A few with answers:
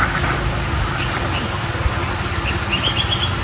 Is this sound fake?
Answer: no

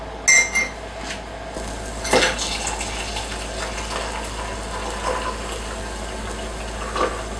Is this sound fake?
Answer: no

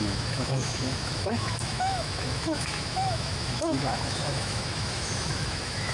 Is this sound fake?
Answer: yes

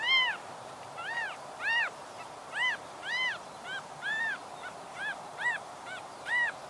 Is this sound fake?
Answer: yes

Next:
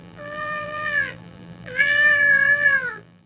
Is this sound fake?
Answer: yes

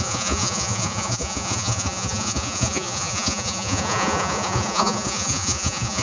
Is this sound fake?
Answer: yes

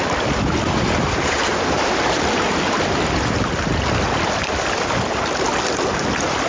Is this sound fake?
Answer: no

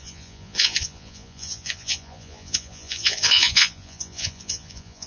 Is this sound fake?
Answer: yes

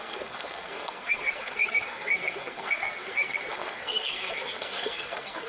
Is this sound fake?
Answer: yes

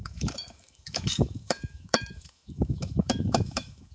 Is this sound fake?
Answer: yes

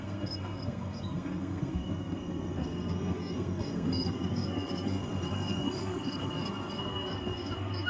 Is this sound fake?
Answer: yes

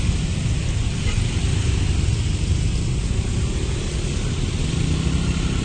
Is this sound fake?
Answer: no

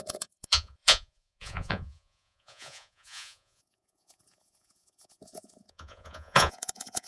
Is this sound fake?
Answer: yes